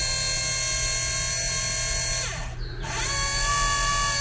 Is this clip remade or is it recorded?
recorded